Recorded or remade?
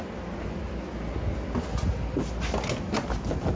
recorded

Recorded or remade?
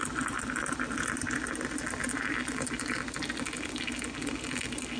recorded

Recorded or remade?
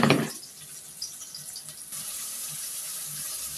recorded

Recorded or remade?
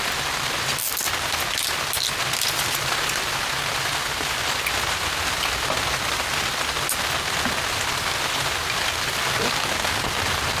recorded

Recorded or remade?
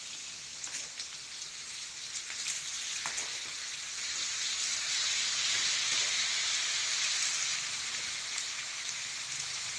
recorded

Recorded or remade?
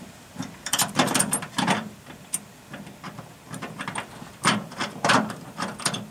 remade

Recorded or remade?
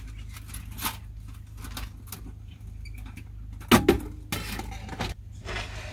recorded